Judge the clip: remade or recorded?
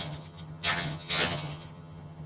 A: remade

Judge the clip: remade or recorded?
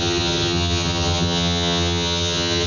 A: remade